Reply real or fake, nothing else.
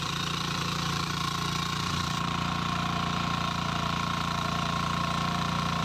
fake